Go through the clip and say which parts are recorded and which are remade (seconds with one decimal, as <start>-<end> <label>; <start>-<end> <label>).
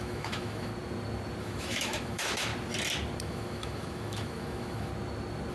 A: 0.0-0.7 remade; 0.7-1.4 recorded; 1.4-2.5 remade; 2.5-3.2 recorded; 3.2-4.9 remade; 4.9-5.5 recorded